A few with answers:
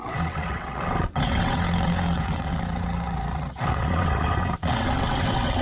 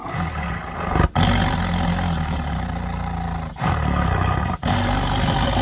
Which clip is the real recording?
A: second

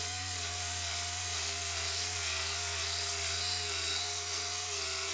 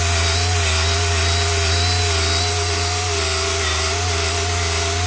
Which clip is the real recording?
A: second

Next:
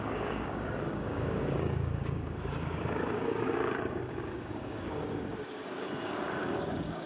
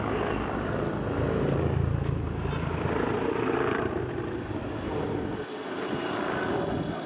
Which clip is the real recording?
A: second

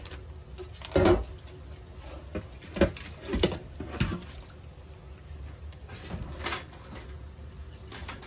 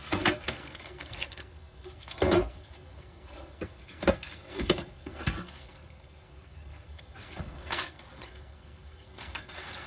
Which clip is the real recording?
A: first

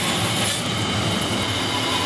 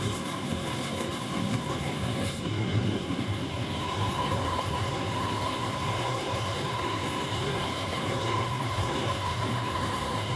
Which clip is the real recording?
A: first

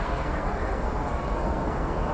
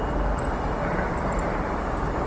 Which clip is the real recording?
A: second